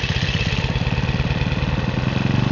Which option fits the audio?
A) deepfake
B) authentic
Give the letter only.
B